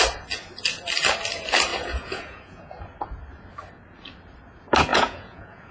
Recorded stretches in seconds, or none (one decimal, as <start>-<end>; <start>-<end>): 0.0-1.7; 2.8-4.9